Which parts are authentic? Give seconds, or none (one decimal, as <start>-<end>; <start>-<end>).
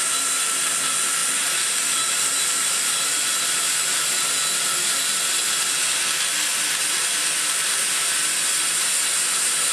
0.0-9.7